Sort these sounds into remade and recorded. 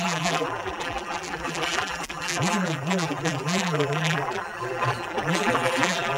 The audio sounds remade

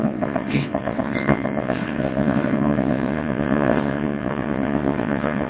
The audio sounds remade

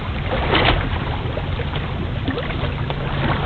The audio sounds recorded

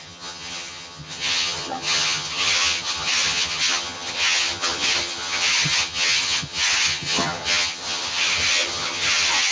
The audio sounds remade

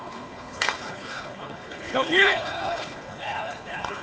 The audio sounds remade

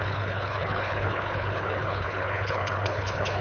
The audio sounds remade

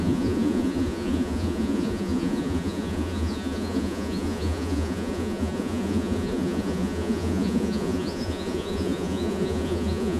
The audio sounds remade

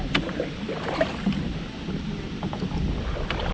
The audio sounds recorded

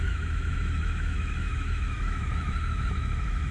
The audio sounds remade